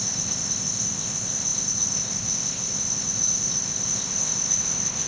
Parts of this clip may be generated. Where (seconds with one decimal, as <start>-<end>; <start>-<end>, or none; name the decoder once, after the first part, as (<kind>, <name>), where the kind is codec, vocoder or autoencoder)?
0.0-5.1 (codec, ZipCodec)